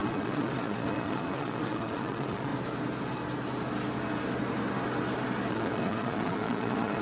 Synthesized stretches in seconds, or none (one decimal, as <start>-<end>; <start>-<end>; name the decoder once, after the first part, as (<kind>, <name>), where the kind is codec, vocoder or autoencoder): 0.0-2.5 (vocoder, Vocos); 5.5-7.0